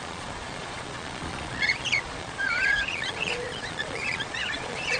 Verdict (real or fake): fake